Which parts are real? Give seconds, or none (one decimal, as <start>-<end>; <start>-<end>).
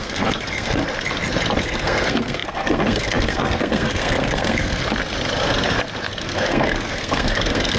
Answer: 0.8-1.6; 4.8-6.2